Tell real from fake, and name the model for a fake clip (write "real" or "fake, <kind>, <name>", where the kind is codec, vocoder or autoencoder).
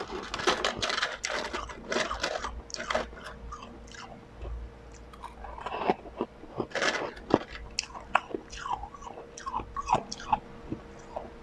real